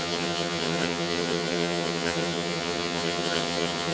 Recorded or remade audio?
remade